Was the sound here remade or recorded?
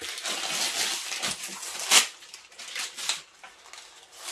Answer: recorded